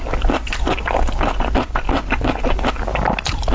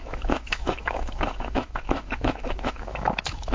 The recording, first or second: first